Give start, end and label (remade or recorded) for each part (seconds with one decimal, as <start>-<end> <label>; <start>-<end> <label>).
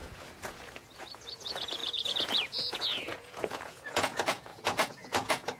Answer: 0.0-5.6 remade